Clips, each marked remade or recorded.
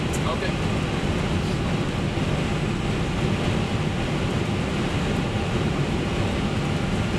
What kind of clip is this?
recorded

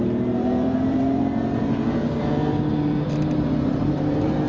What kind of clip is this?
remade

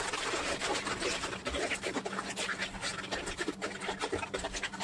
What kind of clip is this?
remade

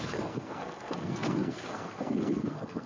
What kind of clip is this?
remade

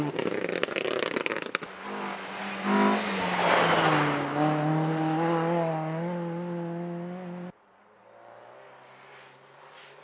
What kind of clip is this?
recorded